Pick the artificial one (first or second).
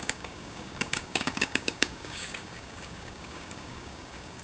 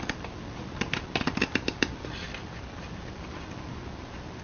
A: first